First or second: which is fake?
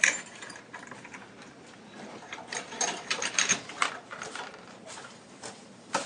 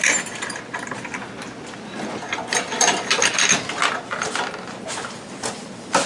first